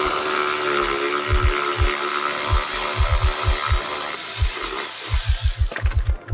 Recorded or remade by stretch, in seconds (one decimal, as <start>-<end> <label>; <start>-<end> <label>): 0.0-6.3 recorded

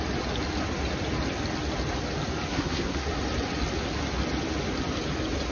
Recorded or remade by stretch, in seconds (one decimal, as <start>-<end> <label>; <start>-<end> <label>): 0.0-2.5 recorded; 2.5-3.2 remade; 3.2-5.5 recorded